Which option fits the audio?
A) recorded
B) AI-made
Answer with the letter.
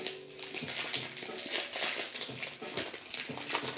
A